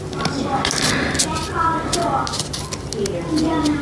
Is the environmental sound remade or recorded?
recorded